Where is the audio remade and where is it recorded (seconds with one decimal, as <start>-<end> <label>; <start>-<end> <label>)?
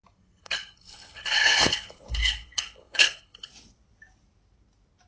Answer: 0.0-0.4 recorded; 0.4-3.5 remade; 3.5-5.1 recorded